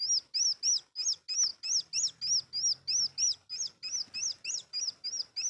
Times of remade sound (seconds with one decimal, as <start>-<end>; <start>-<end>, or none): none